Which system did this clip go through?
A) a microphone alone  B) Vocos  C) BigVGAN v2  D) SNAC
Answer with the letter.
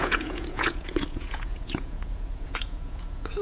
B